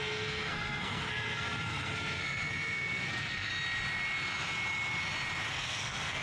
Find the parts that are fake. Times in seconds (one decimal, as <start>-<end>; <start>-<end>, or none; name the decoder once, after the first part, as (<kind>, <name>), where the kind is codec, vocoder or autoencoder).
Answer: 0.0-3.5 (codec, SNAC); 5.5-6.2